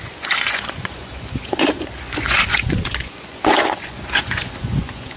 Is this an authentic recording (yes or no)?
no